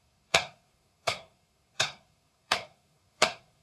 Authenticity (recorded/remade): remade